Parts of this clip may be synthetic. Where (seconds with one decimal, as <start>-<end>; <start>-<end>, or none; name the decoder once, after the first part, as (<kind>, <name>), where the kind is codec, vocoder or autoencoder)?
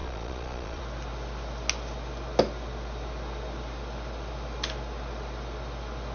0.0-0.8 (vocoder, Vocos)